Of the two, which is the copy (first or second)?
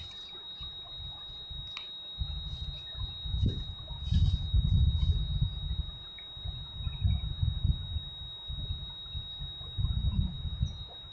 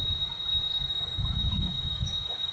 second